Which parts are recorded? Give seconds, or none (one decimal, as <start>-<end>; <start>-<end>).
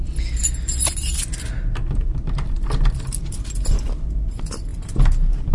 0.0-5.5